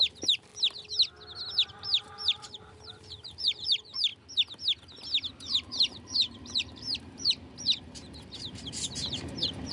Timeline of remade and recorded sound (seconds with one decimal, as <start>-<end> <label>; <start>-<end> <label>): 0.0-0.5 remade; 0.5-1.7 recorded; 1.7-4.1 remade; 4.1-5.4 recorded; 5.4-9.7 remade